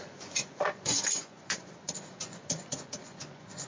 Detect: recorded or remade remade